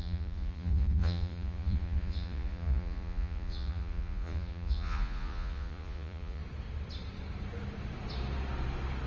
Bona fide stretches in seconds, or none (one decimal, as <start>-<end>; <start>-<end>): 6.4-9.1